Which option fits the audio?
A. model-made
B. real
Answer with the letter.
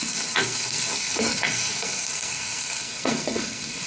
A